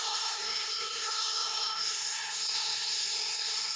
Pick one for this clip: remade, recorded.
remade